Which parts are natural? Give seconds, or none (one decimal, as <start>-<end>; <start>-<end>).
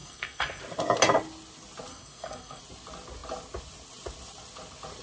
0.6-1.9; 2.6-5.0